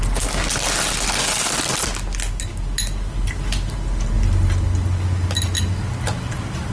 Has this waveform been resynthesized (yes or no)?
no